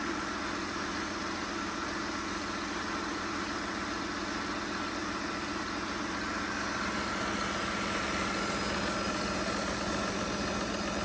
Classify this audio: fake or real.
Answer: real